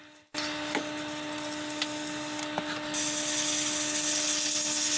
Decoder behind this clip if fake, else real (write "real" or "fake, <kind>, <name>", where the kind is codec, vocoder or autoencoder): real